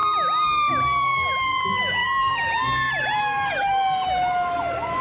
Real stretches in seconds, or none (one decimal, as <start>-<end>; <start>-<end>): 0.0-2.0